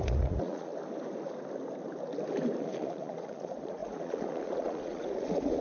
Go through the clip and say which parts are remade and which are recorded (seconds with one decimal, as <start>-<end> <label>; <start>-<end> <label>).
0.0-0.7 remade; 0.7-2.6 recorded; 2.6-5.6 remade